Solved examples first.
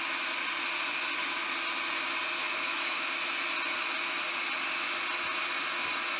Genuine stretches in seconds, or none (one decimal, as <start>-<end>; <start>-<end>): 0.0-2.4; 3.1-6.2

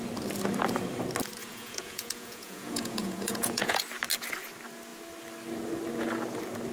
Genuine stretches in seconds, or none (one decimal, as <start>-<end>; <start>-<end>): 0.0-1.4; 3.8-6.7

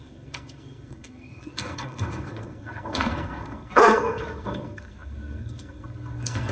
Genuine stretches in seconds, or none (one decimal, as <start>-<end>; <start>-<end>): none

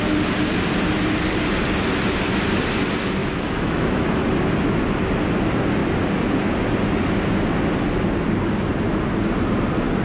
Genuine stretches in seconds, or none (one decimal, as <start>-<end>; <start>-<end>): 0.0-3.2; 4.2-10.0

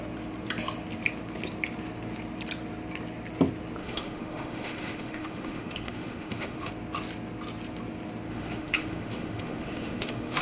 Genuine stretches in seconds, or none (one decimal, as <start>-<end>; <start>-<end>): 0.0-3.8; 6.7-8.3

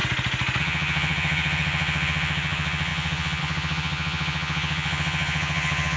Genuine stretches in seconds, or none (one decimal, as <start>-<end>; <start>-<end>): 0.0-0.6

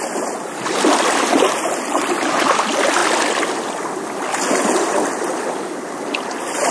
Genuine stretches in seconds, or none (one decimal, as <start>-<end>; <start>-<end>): 0.0-6.7